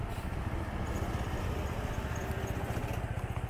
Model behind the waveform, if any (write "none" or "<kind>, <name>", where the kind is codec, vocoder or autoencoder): none